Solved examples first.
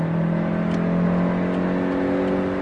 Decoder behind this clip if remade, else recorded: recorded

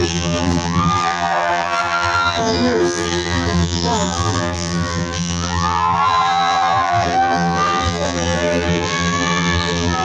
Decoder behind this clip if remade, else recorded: remade, vocoder, BigVGAN v2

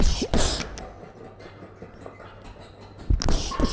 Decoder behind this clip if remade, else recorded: recorded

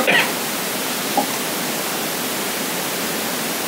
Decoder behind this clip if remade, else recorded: recorded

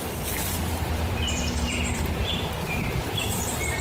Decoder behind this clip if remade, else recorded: remade, vocoder, BigVGAN v2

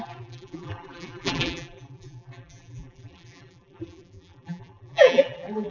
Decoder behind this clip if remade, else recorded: remade, vocoder, BigVGAN v2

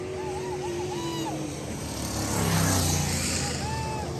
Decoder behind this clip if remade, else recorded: recorded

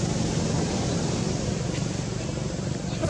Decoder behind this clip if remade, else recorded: recorded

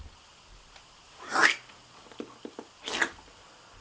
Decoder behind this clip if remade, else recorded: recorded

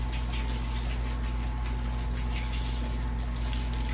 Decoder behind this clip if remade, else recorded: recorded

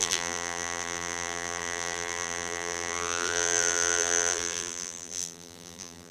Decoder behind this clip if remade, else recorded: remade, vocoder, BigVGAN v2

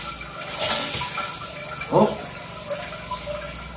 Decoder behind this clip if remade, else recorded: recorded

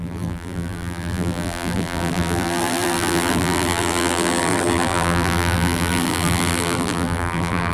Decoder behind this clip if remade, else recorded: remade, vocoder, BigVGAN v2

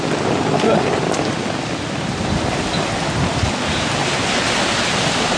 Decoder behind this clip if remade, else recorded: recorded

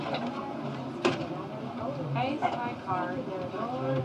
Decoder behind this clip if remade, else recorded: recorded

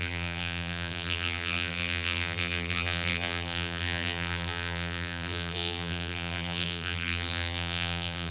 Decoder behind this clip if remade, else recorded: remade, vocoder, BigVGAN v2